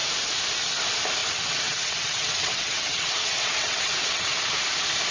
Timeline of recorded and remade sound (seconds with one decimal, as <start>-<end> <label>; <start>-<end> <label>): 0.0-1.2 recorded; 1.2-4.3 remade; 4.3-5.1 recorded